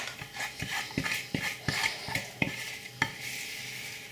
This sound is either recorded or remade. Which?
recorded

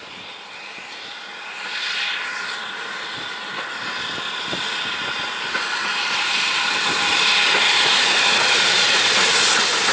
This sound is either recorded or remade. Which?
recorded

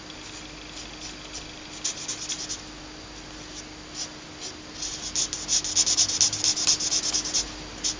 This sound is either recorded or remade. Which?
recorded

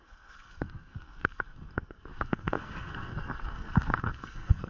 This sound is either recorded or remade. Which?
remade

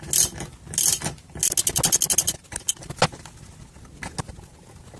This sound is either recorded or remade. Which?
recorded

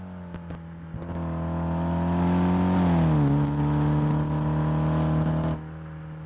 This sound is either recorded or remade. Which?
recorded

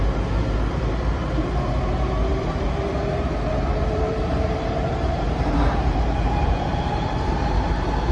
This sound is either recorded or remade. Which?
remade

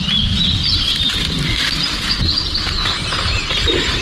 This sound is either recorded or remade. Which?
recorded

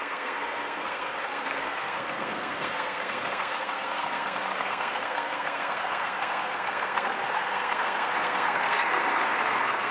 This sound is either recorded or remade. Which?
remade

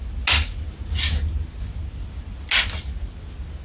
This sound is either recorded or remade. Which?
recorded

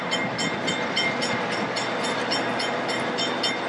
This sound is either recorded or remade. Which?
recorded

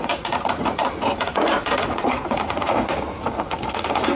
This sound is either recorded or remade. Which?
remade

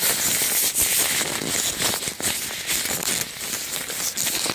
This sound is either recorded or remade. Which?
recorded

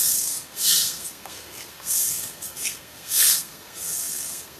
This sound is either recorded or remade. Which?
remade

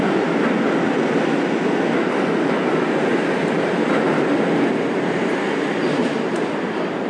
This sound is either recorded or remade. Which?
recorded